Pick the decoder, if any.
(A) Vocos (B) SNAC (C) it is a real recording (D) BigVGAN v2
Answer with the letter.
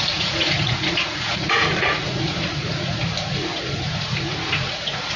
A